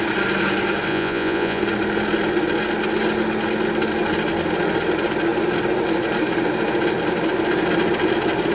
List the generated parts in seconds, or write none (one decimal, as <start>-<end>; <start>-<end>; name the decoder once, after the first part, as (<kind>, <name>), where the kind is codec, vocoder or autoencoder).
0.9-1.6 (vocoder, Vocos)

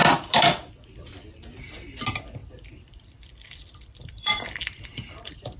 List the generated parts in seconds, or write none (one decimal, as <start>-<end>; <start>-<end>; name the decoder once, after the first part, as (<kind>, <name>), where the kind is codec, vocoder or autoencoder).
2.4-5.6 (vocoder, BigVGAN v2)

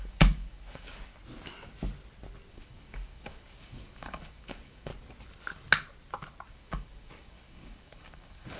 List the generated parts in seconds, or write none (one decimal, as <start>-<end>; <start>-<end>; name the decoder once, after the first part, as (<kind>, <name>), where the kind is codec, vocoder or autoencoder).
0.0-1.1 (codec, DAC); 2.5-4.9; 6.5-8.6

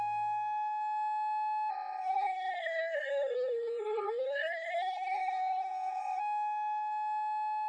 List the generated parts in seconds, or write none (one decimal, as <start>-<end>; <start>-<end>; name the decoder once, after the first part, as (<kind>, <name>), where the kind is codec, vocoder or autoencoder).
1.7-6.2 (codec, SNAC)

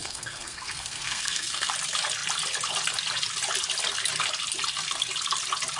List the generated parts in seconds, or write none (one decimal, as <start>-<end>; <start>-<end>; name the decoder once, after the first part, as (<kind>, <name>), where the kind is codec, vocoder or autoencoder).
0.0-1.7 (codec, SNAC)

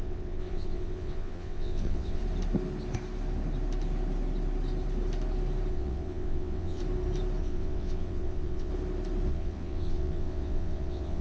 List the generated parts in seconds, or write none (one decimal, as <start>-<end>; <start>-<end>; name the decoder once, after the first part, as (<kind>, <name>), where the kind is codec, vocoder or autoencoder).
0.0-2.2 (vocoder, WaveNeXt); 5.7-6.8; 7.4-8.7; 9.3-11.2

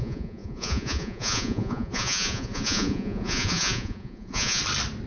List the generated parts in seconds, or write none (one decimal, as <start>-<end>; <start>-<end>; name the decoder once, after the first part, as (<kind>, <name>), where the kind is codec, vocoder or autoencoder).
0.0-4.6 (vocoder, Vocos)

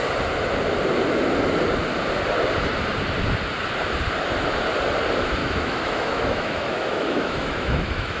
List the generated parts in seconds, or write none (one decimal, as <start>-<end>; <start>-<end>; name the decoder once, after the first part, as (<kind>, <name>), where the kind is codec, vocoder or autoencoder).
5.4-8.2 (autoencoder, DAC-VAE)